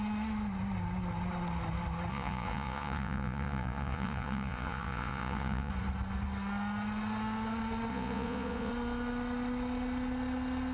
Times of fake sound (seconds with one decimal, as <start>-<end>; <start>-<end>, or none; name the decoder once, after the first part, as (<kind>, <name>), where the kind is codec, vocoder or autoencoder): 2.1-5.7 (vocoder, Vocos); 7.9-8.7